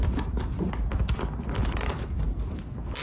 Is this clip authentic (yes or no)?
yes